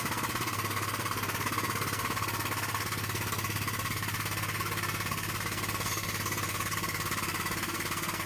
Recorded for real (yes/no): no